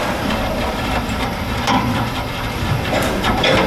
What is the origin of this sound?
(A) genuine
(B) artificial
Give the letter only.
B